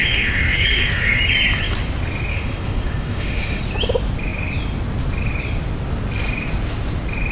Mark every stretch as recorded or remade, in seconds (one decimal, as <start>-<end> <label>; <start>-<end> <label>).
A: 0.0-1.2 remade; 1.2-2.3 recorded; 2.3-3.6 remade; 3.6-7.3 recorded